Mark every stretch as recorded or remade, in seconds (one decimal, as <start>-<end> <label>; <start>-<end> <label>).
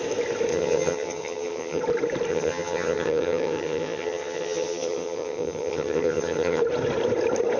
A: 0.0-0.5 recorded; 0.5-1.8 remade; 1.8-2.3 recorded; 2.3-6.6 remade; 6.6-7.6 recorded